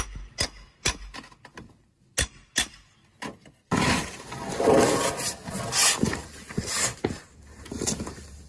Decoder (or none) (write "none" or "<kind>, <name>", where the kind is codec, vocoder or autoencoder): none